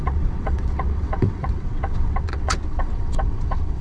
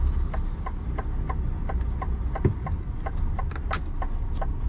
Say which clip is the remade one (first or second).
first